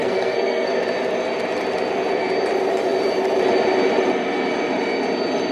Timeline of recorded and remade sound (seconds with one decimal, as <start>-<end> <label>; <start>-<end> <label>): 0.0-0.7 remade; 0.7-5.5 recorded